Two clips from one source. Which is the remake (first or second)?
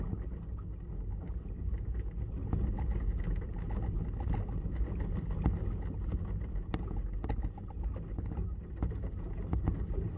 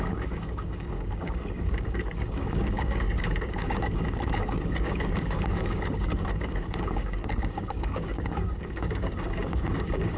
second